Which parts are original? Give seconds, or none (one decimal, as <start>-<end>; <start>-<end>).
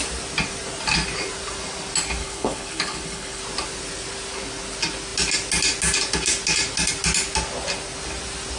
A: 0.0-2.2; 3.4-8.6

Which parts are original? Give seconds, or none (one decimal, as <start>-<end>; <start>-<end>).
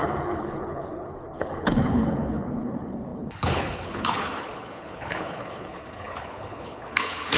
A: none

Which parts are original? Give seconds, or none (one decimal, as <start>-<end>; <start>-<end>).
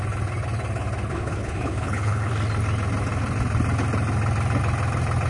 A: 0.0-1.1; 2.3-5.3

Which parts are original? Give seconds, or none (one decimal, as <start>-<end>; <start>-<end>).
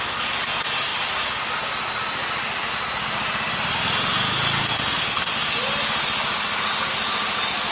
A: 0.0-7.7